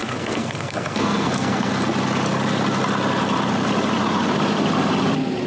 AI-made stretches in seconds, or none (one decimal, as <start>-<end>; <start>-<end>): 0.0-1.7